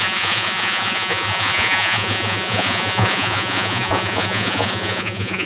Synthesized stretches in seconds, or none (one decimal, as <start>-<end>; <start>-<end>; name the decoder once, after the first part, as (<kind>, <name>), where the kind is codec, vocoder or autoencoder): 0.0-5.5 (vocoder, Vocos)